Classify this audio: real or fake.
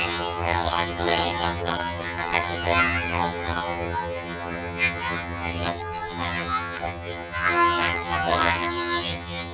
fake